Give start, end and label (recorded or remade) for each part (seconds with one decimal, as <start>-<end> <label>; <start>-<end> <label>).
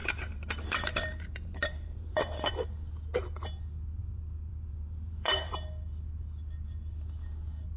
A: 0.0-2.5 remade; 2.5-4.5 recorded; 4.5-5.5 remade; 5.5-7.8 recorded